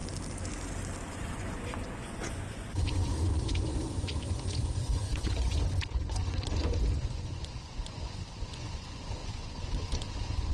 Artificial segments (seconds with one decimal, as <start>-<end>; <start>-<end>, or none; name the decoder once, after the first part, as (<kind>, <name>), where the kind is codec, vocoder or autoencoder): 1.1-10.5 (vocoder, Vocos)